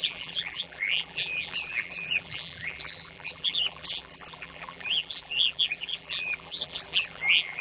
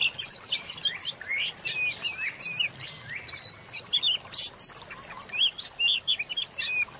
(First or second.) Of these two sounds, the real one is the second